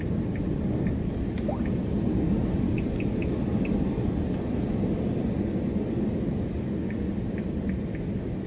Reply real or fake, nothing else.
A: real